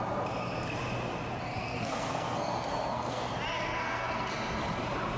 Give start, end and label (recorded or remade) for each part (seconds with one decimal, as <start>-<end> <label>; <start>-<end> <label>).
0.0-1.6 recorded; 1.6-3.3 remade; 3.3-3.7 recorded; 3.7-4.3 remade; 4.3-5.2 recorded